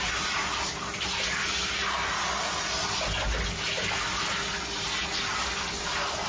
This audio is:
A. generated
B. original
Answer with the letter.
B